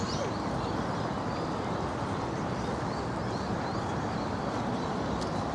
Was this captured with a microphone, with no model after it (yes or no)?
yes